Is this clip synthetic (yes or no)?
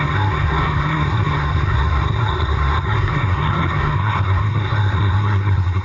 yes